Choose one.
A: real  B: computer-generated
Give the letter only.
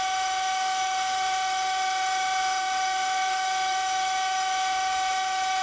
B